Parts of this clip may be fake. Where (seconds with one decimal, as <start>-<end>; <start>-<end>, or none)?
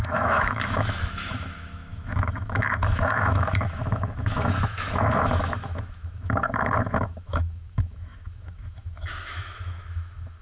0.0-10.4